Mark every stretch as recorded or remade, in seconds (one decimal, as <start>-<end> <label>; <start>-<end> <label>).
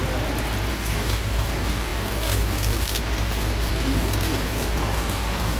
0.0-0.7 recorded; 0.7-5.6 remade